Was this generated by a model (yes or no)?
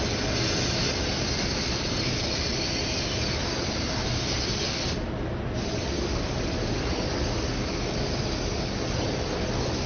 yes